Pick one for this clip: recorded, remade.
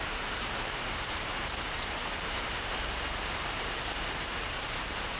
remade